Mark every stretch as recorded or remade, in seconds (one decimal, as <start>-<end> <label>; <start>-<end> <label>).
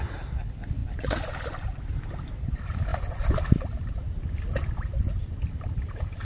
0.0-6.2 recorded